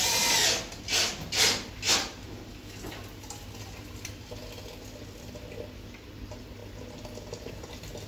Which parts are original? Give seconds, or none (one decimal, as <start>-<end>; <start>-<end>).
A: 0.0-8.1